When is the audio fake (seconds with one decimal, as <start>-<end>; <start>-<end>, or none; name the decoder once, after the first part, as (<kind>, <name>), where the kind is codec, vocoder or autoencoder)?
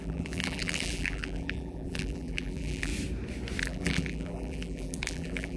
0.0-2.9 (vocoder, BigVGAN v2); 3.6-5.6